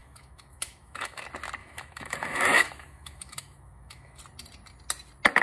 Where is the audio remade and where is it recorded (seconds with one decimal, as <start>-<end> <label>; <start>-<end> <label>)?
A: 0.0-1.2 remade; 1.2-1.6 recorded; 1.6-4.2 remade; 4.2-5.4 recorded